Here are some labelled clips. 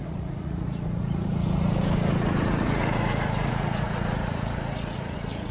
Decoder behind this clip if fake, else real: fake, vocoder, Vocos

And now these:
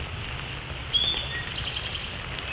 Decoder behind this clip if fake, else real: real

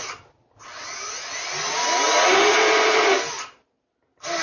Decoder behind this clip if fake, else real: real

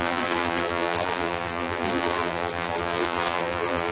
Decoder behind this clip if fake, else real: fake, vocoder, BigVGAN v2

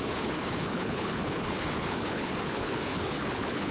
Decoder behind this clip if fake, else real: fake, codec, HILCodec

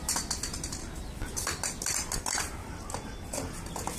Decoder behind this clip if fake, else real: real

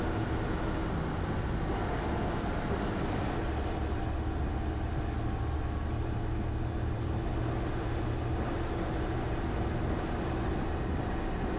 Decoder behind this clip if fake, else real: real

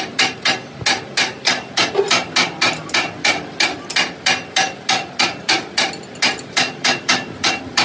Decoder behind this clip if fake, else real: real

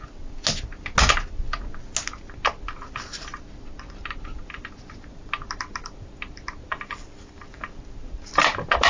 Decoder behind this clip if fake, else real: real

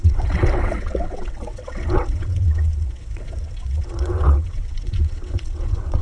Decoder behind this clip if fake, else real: fake, vocoder, WaveNeXt